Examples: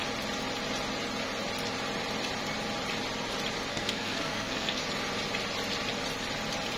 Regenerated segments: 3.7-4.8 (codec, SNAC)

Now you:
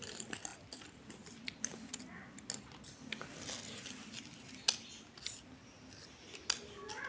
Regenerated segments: none

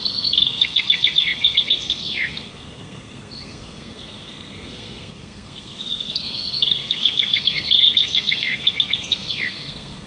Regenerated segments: 0.0-10.1 (codec, SNAC)

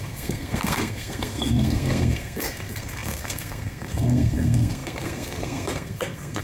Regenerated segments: 0.0-6.4 (codec, SNAC)

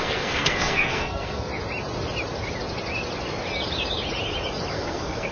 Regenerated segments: 0.0-1.5 (codec, SNAC); 4.7-5.3